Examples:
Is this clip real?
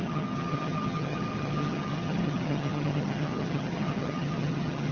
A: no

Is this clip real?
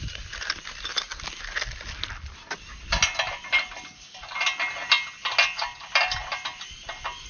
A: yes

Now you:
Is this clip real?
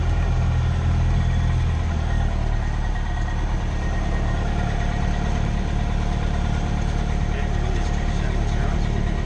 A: yes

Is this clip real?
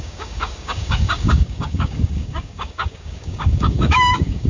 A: no